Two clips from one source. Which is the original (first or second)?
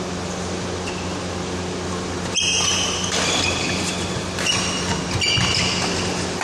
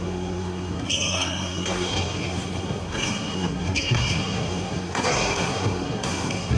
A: first